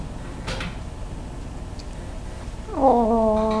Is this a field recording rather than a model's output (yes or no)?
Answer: yes